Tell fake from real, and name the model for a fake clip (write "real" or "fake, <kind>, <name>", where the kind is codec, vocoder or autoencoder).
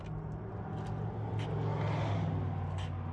real